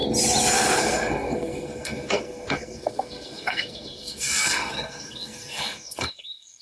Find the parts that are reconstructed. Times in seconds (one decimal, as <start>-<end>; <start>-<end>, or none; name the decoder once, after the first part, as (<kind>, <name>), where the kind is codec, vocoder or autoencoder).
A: 0.8-6.6 (codec, SNAC)